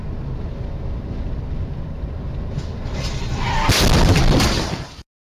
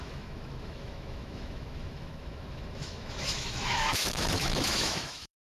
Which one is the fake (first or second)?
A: second